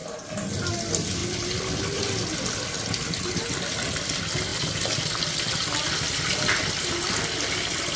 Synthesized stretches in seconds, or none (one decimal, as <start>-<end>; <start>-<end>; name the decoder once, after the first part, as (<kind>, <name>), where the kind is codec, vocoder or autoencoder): none